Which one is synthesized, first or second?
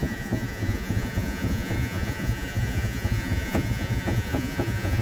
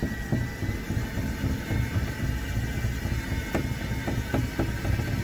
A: first